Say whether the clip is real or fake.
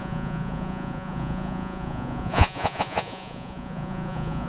fake